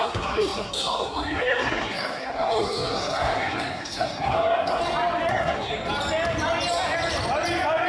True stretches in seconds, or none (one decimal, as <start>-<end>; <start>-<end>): 4.8-5.3; 5.7-7.9